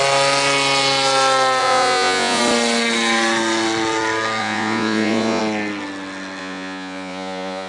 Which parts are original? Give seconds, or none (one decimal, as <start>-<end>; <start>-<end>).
0.0-1.6; 2.4-4.4; 5.4-6.4